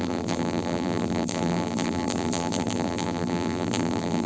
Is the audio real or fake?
fake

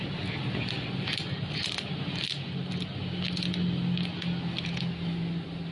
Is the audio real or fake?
real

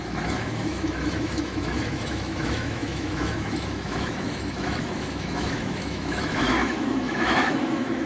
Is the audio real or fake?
fake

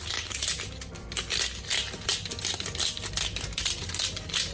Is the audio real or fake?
real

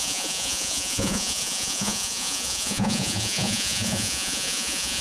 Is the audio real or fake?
fake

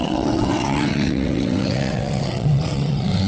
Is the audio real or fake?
fake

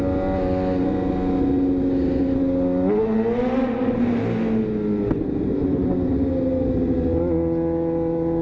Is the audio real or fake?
real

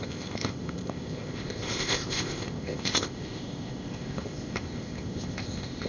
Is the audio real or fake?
fake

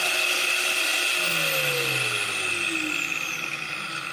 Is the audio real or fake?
real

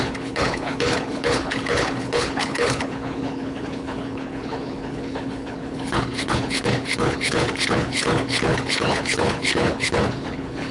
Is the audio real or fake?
fake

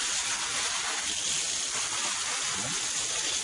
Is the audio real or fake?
real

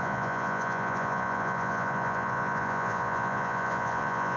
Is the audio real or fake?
fake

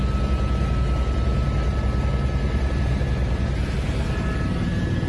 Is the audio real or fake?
real